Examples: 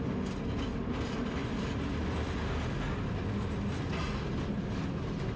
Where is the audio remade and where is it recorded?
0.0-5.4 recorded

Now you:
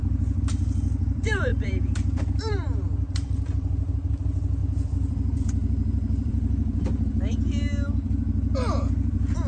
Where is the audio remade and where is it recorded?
0.0-6.9 remade; 6.9-8.9 recorded; 8.9-9.5 remade

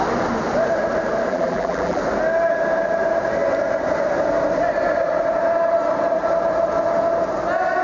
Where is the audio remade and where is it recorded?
0.0-1.3 recorded; 1.3-2.0 remade; 2.0-7.8 recorded

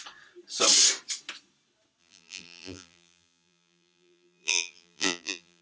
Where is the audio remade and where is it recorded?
0.0-2.0 recorded; 2.0-5.6 remade

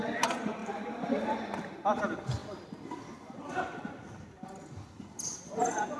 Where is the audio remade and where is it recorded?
0.0-0.6 recorded; 0.6-2.0 remade; 2.0-2.4 recorded; 2.4-3.6 remade; 3.6-6.0 recorded

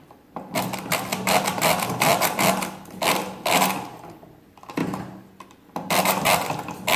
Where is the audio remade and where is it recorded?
0.0-7.0 recorded